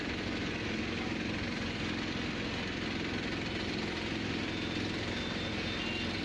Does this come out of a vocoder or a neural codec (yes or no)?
no